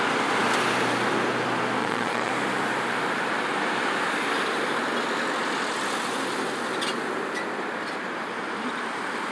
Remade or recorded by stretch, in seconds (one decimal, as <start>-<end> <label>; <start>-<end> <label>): 0.0-1.8 recorded; 1.8-2.3 remade; 2.3-9.3 recorded